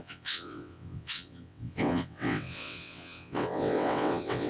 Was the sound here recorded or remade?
remade